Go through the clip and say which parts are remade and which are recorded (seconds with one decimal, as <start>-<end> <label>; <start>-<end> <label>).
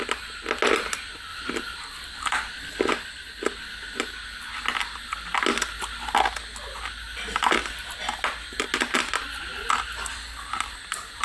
0.0-1.3 recorded; 1.3-2.9 remade; 2.9-11.2 recorded